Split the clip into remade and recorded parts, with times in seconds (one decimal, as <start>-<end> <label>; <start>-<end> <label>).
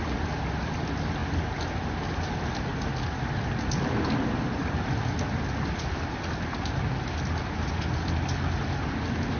0.0-9.4 recorded